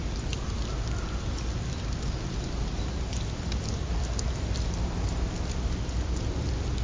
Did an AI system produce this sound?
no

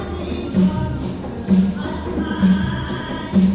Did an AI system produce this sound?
no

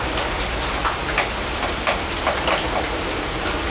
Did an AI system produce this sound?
no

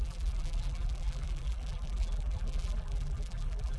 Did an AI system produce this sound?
yes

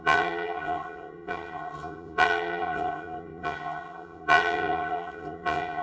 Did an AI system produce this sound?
yes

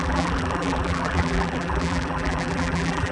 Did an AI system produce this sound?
yes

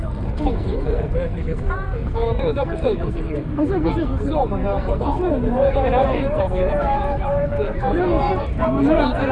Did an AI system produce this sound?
yes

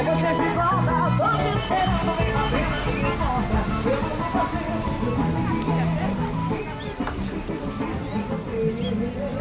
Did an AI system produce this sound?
no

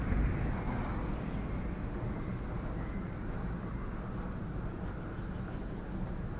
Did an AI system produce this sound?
no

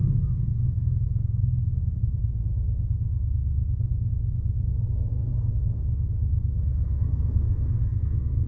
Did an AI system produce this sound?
yes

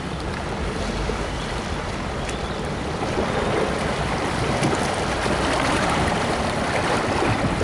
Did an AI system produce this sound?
yes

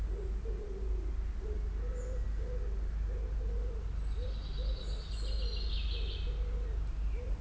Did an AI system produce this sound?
no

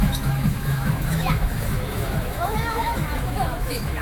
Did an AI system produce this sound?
yes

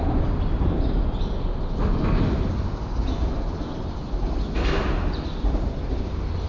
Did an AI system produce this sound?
no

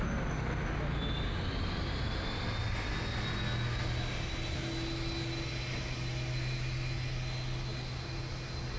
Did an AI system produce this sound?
no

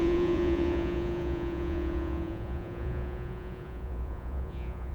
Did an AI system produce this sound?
yes